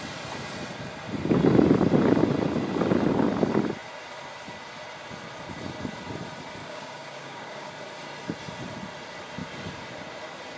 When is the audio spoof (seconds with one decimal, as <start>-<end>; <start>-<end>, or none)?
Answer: 6.6-7.7